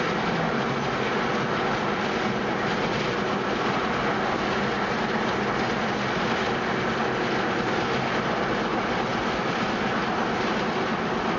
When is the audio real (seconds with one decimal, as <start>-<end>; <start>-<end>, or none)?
0.0-11.4